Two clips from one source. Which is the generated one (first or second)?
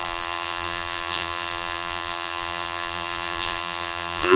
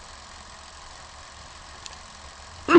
first